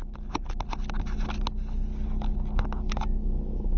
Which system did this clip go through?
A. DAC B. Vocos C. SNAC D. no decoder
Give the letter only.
D